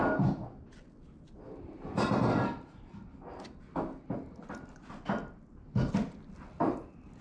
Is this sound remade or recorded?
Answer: recorded